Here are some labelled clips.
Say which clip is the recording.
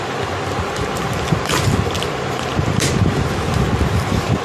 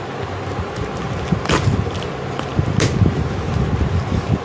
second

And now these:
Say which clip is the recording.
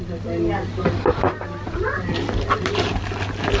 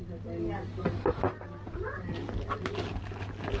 second